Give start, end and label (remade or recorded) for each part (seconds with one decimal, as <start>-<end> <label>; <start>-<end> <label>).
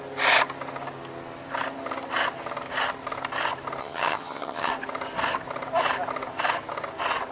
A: 0.0-3.8 recorded; 3.8-4.7 remade; 4.7-7.3 recorded